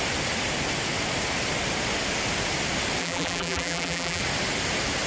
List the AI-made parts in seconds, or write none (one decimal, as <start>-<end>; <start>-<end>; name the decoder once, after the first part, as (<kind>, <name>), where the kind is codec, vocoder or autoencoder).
3.0-4.2 (vocoder, BigVGAN v2)